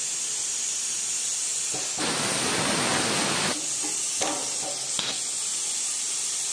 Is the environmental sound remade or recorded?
recorded